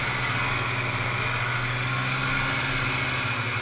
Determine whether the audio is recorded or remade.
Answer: recorded